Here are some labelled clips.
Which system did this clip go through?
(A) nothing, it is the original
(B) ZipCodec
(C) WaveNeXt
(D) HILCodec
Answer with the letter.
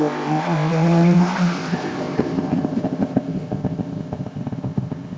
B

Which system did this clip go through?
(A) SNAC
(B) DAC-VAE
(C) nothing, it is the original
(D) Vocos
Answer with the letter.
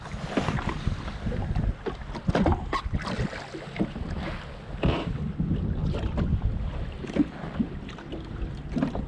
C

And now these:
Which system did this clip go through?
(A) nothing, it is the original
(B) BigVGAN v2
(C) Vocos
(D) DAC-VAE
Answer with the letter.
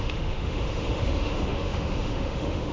D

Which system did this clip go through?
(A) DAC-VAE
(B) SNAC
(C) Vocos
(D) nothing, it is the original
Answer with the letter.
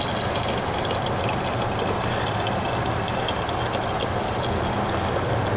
D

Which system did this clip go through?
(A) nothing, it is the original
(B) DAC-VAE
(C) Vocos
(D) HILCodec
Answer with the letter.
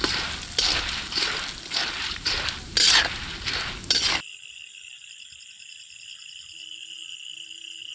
A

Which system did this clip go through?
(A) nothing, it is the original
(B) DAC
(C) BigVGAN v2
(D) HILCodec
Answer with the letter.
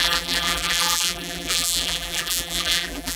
C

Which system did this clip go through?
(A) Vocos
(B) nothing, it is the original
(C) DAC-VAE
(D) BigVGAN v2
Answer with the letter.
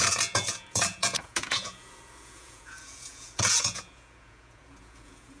A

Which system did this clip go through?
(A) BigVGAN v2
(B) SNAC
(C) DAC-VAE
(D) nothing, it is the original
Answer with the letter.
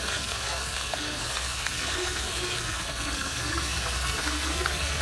B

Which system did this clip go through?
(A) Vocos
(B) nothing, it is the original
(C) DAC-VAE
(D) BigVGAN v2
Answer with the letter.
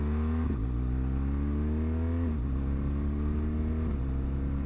B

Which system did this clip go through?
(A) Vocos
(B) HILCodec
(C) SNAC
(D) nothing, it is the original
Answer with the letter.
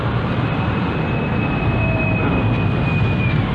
D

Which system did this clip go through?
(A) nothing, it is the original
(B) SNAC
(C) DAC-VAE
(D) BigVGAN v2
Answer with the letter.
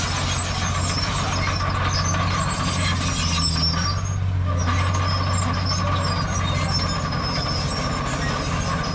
A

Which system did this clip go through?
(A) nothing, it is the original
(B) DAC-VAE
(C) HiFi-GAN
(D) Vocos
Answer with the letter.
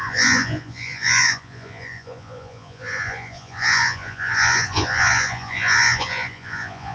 D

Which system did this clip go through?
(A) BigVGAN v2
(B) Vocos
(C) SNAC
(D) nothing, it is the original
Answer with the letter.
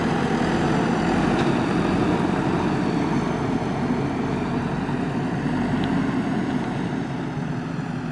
D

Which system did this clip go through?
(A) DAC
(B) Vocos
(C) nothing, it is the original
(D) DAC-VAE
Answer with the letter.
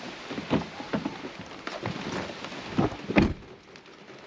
C